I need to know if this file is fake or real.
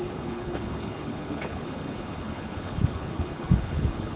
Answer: fake